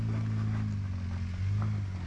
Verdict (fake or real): real